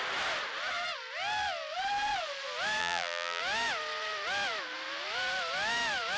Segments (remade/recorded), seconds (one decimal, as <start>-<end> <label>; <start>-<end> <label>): 0.0-2.8 recorded; 2.8-3.4 remade; 3.4-6.2 recorded